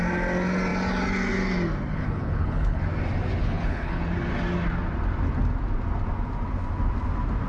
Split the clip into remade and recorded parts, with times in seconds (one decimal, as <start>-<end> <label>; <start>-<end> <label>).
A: 0.0-1.9 recorded; 1.9-2.8 remade; 2.8-3.4 recorded; 3.4-4.0 remade; 4.0-7.5 recorded